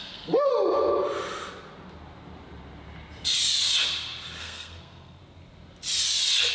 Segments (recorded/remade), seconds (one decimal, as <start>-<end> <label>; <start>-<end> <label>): 0.0-0.5 remade; 0.5-4.4 recorded; 4.4-5.2 remade; 5.2-6.5 recorded